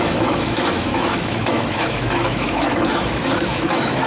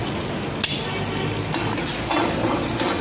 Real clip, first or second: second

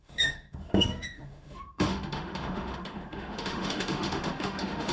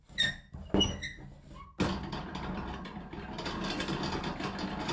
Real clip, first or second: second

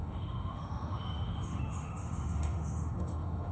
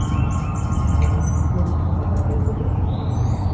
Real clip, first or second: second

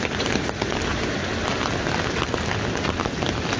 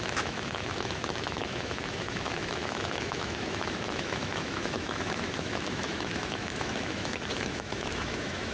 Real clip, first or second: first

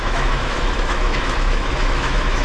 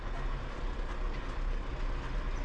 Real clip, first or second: second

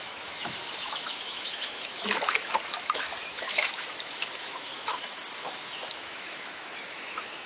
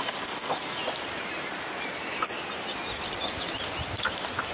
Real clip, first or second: second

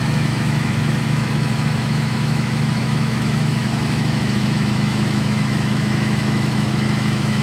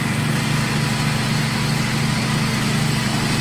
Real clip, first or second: second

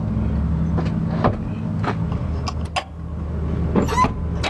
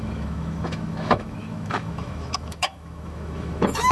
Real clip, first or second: first